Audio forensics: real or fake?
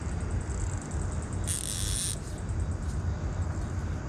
real